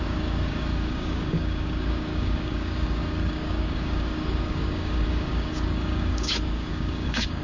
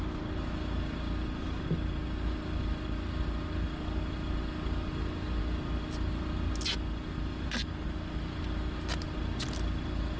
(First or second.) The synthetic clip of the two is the first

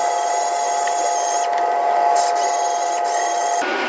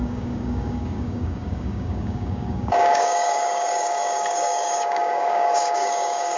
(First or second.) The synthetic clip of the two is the second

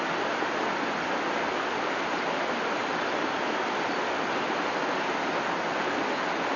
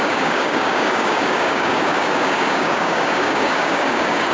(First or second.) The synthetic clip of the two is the second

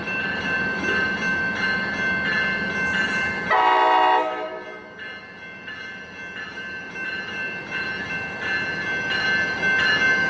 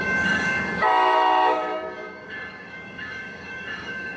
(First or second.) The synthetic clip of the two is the second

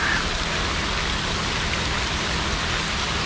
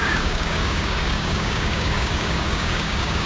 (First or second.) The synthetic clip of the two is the second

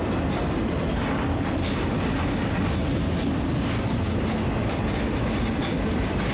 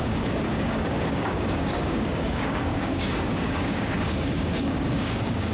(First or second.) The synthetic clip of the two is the second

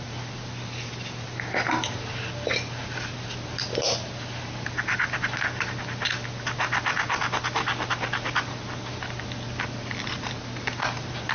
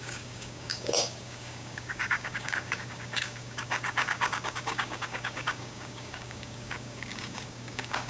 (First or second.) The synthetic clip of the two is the second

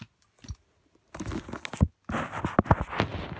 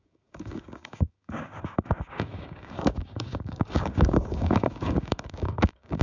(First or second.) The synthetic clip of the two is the second